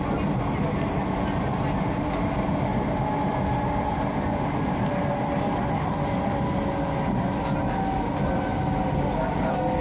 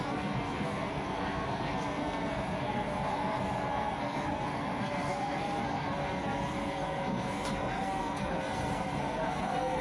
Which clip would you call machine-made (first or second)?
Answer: second